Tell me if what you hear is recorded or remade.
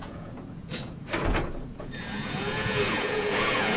remade